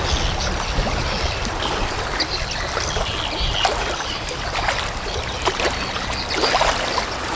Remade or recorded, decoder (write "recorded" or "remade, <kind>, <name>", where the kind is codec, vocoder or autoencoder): recorded